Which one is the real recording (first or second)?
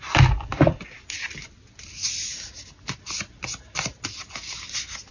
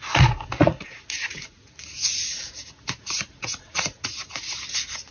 first